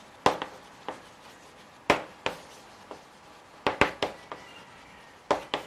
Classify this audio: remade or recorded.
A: recorded